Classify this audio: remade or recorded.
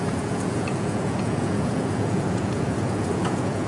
remade